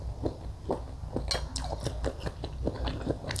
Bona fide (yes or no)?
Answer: yes